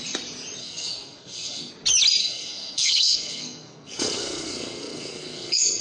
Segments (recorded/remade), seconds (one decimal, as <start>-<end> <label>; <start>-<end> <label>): 0.0-0.6 recorded; 0.6-1.7 remade; 1.7-2.2 recorded; 2.2-5.8 remade